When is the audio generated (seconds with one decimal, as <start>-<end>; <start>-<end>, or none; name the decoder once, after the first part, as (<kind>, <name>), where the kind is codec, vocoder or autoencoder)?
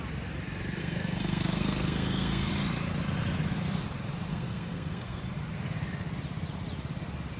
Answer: 0.8-2.5 (codec, SNAC); 4.3-5.2